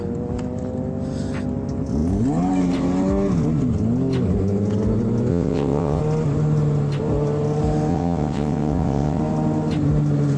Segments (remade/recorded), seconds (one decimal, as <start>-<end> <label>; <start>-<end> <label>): 0.0-5.3 recorded; 5.3-6.0 remade; 6.0-7.9 recorded; 7.9-9.2 remade; 9.2-10.4 recorded